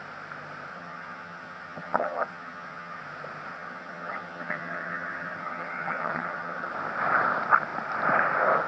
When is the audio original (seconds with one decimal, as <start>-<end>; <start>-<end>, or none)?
0.0-0.7; 3.0-3.5; 6.7-8.7